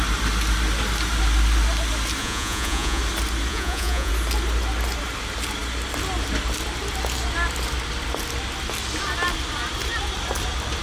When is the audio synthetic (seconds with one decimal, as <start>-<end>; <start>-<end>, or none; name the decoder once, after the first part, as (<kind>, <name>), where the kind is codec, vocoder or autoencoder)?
2.2-3.0 (vocoder, Vocos); 3.5-4.1